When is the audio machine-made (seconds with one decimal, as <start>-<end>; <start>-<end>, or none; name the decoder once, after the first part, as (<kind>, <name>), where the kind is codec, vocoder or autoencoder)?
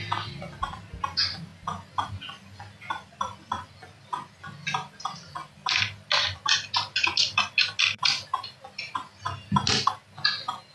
none